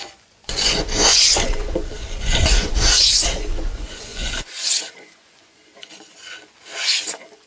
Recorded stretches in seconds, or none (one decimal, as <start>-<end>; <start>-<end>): none